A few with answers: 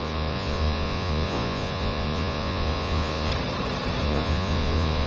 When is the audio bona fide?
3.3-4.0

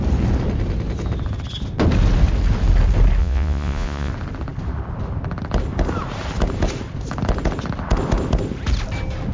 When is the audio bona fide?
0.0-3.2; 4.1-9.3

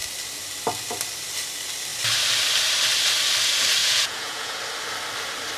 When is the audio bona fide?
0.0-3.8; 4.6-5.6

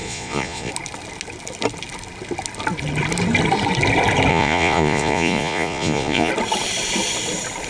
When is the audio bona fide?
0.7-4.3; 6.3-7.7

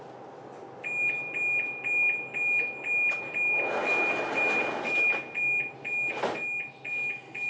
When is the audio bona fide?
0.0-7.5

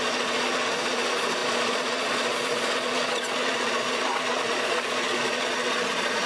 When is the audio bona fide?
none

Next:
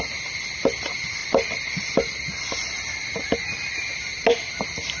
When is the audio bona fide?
0.0-5.0